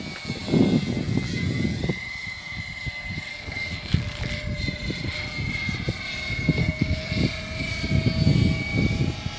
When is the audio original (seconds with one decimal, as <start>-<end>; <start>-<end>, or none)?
0.0-3.3; 4.0-6.6; 7.1-9.4